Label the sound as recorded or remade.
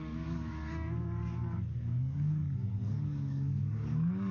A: remade